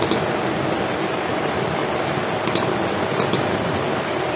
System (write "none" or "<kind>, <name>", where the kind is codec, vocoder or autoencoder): none